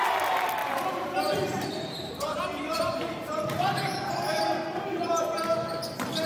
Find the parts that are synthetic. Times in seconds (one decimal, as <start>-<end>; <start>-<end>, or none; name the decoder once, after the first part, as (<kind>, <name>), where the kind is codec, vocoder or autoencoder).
0.6-4.4 (vocoder, BigVGAN v2)